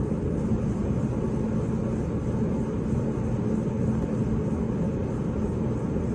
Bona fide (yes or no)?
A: yes